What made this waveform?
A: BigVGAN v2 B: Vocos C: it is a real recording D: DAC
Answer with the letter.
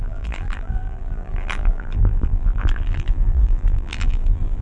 A